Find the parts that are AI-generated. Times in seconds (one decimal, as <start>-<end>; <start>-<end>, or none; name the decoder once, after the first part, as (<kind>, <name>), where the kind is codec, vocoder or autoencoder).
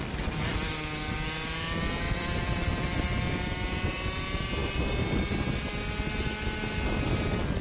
none